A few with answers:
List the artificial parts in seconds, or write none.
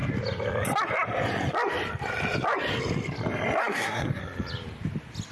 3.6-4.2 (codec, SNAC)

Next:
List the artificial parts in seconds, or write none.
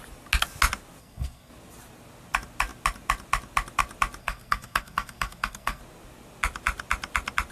1.0-1.5 (codec, SNAC); 4.2-5.8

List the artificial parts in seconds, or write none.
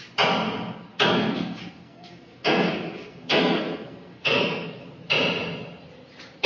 0.9-4.8 (codec, SNAC)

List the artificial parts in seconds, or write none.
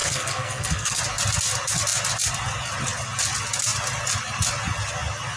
0.0-1.0 (codec, SNAC)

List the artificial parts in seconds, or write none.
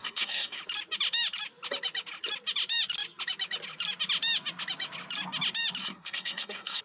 0.0-0.6 (codec, SNAC); 5.8-6.8